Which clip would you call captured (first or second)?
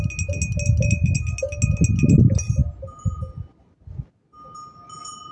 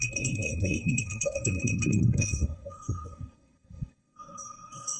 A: first